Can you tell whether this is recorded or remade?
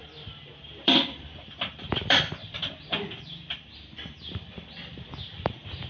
remade